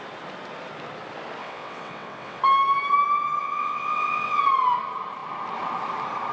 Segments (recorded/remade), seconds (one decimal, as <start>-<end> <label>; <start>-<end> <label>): 0.0-1.4 recorded; 1.4-2.4 remade; 2.4-3.4 recorded; 3.4-4.4 remade; 4.4-6.3 recorded